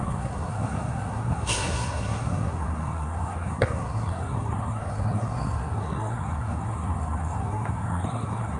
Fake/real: fake